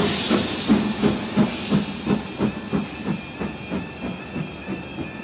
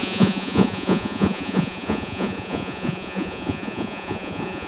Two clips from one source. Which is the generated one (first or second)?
second